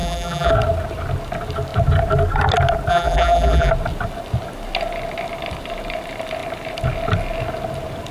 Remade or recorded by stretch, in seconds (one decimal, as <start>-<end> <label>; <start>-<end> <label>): 0.0-0.5 remade; 0.5-2.9 recorded; 2.9-3.7 remade; 3.7-8.1 recorded